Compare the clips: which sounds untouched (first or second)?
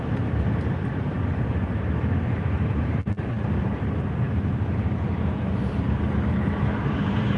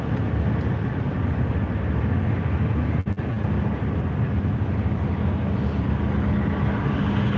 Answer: second